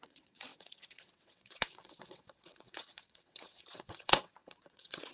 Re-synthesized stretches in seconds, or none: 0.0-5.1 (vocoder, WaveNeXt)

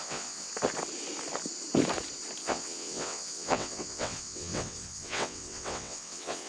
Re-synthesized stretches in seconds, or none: 0.0-0.5 (vocoder, WaveNeXt); 2.4-6.5